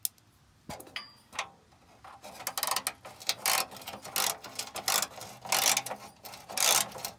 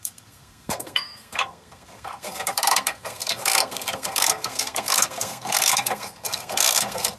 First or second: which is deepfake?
second